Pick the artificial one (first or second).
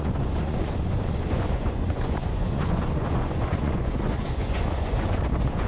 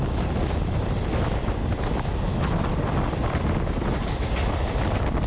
first